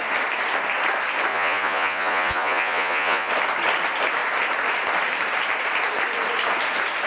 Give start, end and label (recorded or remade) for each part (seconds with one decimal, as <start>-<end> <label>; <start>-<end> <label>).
0.0-1.3 recorded; 1.3-3.3 remade; 3.3-7.1 recorded